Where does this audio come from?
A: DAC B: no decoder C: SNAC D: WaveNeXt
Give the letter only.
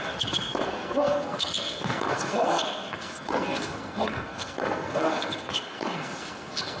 C